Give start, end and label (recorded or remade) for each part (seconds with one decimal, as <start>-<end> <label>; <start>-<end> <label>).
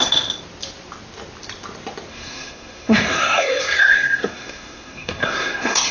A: 0.0-2.1 recorded; 2.1-5.9 remade